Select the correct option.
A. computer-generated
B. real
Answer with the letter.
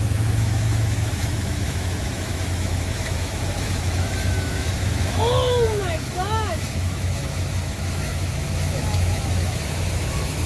A